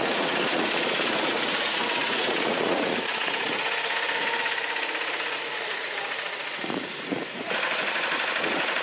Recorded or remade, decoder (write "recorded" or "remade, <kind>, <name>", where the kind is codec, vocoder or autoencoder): remade, vocoder, Vocos